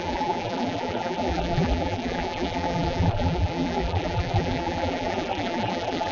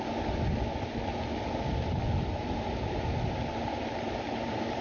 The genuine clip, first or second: second